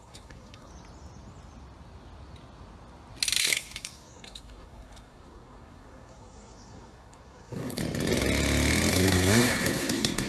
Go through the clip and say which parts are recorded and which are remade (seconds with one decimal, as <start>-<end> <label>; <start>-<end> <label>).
0.0-0.7 remade; 0.7-3.4 recorded; 3.4-7.8 remade; 7.8-8.9 recorded; 8.9-10.3 remade